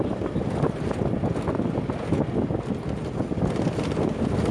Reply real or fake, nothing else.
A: real